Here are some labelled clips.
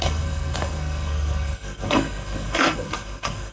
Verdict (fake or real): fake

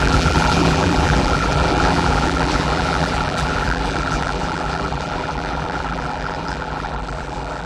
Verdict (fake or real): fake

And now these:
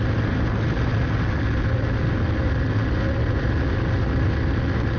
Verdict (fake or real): real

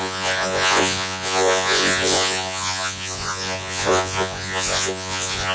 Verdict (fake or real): fake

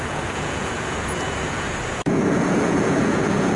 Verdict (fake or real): fake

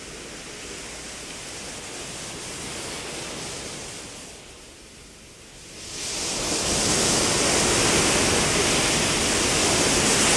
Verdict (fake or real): real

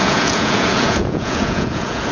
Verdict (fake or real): fake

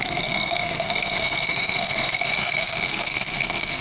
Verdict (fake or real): fake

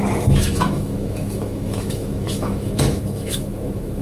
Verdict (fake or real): fake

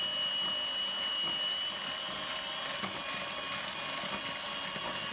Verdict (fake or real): real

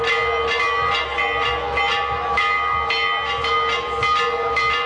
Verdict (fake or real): real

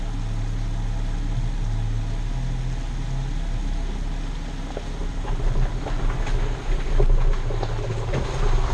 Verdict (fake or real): real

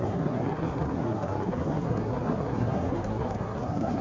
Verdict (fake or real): fake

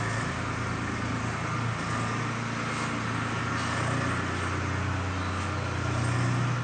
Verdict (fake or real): real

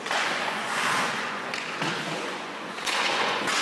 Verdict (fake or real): fake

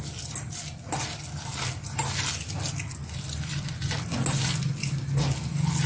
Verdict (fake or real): real